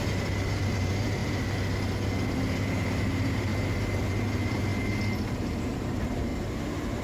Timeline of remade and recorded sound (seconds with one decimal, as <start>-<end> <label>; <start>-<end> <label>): 0.0-1.2 remade; 1.2-3.0 recorded; 3.0-3.5 remade; 3.5-4.0 recorded; 4.0-4.7 remade; 4.7-5.3 recorded; 5.3-6.3 remade; 6.3-7.0 recorded